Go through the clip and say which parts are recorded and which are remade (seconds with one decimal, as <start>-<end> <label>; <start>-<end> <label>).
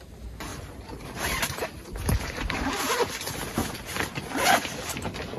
0.0-0.5 recorded; 0.5-3.1 remade; 3.1-3.6 recorded; 3.6-4.9 remade; 4.9-5.4 recorded